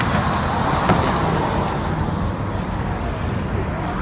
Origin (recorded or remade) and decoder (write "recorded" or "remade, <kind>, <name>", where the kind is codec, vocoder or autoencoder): recorded